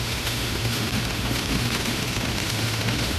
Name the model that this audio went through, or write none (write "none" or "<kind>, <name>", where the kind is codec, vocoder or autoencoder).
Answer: autoencoder, DAC-VAE